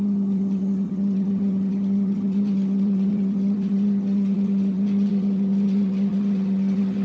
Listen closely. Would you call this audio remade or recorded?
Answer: remade